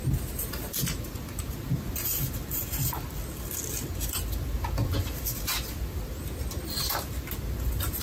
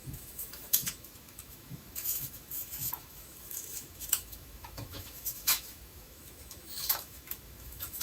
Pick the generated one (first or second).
second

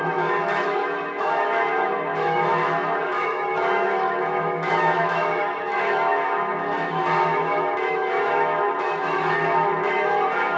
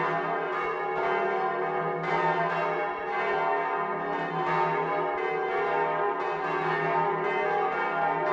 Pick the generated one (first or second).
first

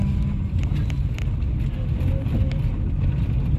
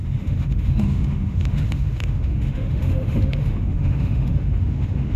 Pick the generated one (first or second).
second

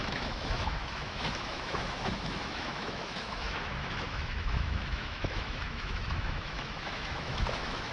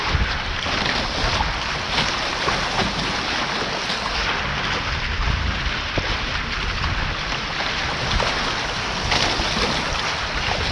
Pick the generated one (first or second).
first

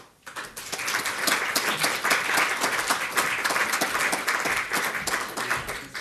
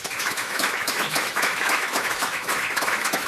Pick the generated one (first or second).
second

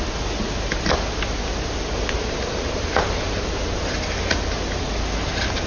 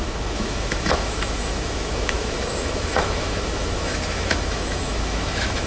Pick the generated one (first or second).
second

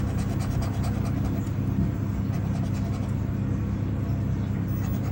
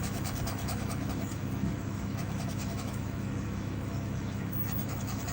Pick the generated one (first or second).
second